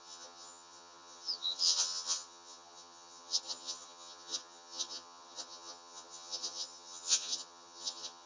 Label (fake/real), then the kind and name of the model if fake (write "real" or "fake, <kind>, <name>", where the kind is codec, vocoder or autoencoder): fake, vocoder, HiFi-GAN